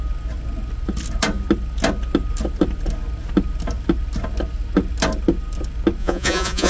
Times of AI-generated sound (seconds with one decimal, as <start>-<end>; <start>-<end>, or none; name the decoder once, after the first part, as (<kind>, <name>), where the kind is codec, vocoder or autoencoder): 6.0-6.7 (vocoder, Vocos)